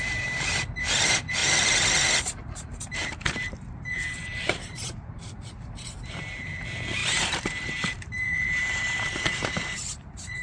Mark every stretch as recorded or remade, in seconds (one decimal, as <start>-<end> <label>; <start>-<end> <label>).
0.0-1.4 remade; 1.4-2.6 recorded; 2.6-10.4 remade